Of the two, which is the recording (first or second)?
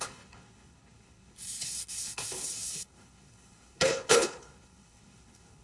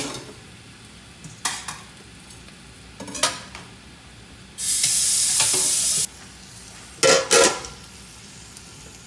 second